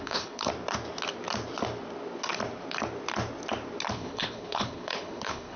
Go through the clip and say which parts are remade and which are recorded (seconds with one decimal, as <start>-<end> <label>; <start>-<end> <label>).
0.0-0.5 remade; 0.5-3.9 recorded; 3.9-5.6 remade